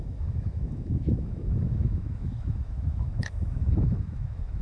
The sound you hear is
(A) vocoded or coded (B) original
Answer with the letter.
A